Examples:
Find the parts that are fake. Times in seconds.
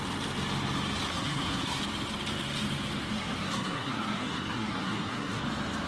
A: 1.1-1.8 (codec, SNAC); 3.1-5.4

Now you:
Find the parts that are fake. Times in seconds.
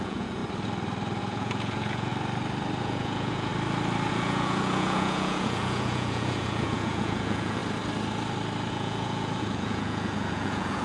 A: 0.0-0.4 (vocoder, Vocos); 1.2-2.1; 2.8-3.5; 4.1-7.6; 8.7-10.8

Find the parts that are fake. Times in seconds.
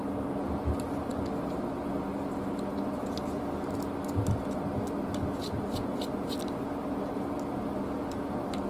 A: none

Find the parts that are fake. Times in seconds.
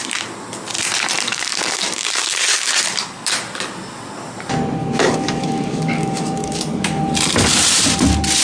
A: 1.3-2.8 (codec, DAC); 4.8-7.0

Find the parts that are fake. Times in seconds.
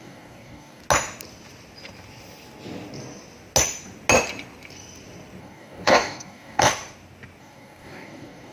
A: 0.0-0.8 (codec, DAC); 5.4-6.7; 7.4-8.5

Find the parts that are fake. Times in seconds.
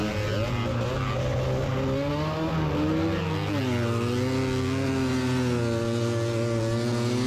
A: none